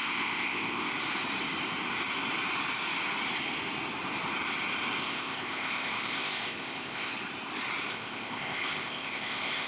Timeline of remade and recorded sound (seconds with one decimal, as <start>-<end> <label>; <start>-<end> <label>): 0.0-0.9 remade; 0.9-5.0 recorded; 5.0-7.1 remade; 7.1-7.9 recorded; 7.9-9.7 remade